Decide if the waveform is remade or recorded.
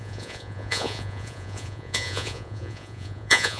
remade